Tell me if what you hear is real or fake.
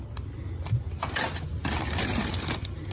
real